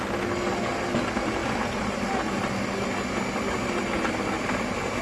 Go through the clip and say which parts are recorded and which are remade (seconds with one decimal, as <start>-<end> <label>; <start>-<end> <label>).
0.0-5.0 recorded